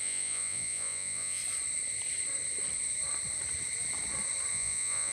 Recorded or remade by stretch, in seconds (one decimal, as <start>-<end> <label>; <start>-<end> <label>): 0.0-1.4 remade; 1.4-4.5 recorded; 4.5-5.1 remade